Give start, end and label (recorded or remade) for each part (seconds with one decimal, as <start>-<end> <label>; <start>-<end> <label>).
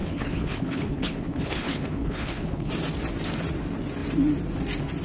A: 0.0-2.7 remade; 2.7-5.0 recorded